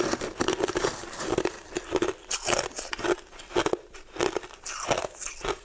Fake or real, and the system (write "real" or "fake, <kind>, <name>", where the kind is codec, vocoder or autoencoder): real